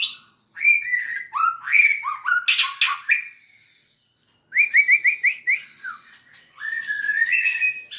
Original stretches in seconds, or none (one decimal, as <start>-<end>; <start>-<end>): 0.0-5.7; 7.4-8.0